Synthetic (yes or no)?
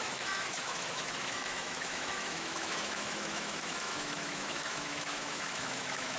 yes